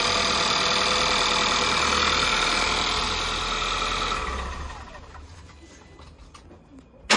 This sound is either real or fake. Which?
real